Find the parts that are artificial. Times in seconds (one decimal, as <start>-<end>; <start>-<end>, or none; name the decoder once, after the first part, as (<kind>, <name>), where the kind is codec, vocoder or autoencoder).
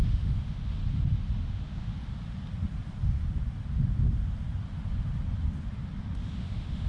0.0-0.8 (autoencoder, DAC-VAE); 1.5-1.9; 6.0-6.9